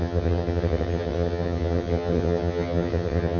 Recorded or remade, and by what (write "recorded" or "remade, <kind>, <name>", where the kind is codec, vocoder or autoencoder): remade, vocoder, HiFi-GAN